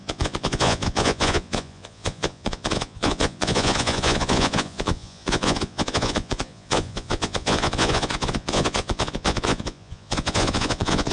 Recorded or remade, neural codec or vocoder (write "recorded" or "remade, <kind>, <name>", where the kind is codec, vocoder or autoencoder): remade, vocoder, Vocos